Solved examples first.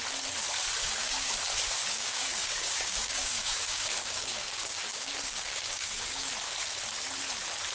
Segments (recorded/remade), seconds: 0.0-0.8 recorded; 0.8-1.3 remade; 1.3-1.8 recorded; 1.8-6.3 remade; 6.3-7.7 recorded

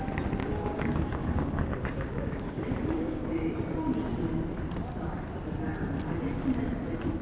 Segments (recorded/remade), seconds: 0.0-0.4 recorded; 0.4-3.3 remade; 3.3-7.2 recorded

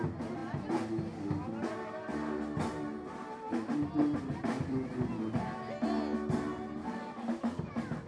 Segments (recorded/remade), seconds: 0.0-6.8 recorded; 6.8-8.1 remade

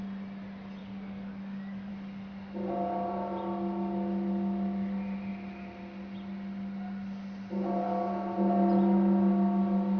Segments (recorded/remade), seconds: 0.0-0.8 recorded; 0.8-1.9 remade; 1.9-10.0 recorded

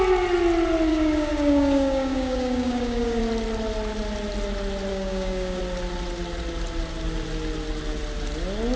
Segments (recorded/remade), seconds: 0.0-0.9 recorded; 0.9-3.2 remade; 3.2-4.9 recorded; 4.9-5.6 remade; 5.6-8.8 recorded